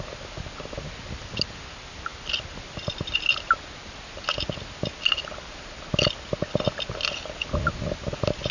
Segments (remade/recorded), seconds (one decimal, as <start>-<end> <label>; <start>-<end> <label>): 0.0-8.5 recorded